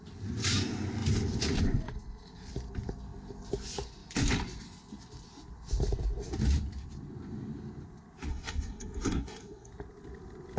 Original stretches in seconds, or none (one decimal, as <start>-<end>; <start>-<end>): 0.0-8.3; 9.7-10.6